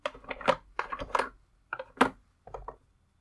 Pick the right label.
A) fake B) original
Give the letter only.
B